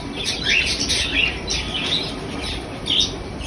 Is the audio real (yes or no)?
yes